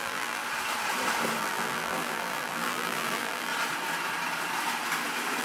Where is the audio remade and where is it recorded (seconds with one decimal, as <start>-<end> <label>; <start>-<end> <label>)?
0.0-0.4 remade; 0.4-1.4 recorded; 1.4-3.5 remade; 3.5-5.4 recorded